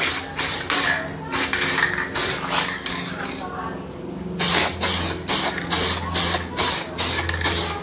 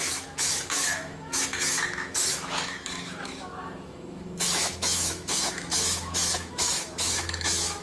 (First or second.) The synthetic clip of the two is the second